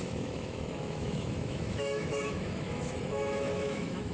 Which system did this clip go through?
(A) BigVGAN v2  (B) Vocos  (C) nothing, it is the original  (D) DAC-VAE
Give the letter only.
D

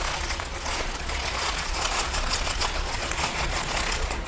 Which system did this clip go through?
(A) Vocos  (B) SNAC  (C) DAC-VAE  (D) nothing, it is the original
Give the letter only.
A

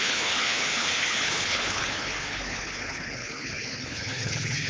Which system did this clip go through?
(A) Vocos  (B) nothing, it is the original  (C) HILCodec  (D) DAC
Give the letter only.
C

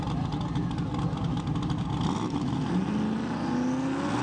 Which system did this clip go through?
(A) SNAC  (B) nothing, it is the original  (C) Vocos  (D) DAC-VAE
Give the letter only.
B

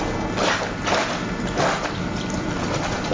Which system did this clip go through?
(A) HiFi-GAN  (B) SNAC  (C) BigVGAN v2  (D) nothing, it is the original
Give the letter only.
D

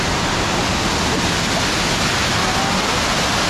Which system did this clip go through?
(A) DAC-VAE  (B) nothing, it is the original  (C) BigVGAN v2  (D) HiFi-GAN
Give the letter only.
B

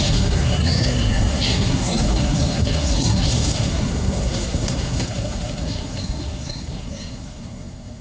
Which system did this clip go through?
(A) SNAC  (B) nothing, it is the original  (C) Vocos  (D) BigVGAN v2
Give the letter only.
A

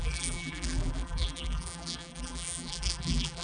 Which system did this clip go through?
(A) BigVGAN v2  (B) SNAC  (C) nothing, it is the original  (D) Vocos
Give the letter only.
A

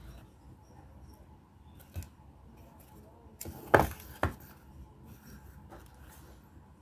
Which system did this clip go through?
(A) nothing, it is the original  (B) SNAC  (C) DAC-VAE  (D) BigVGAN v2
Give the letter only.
A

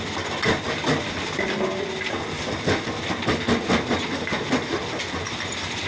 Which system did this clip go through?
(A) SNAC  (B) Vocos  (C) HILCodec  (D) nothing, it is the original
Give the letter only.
D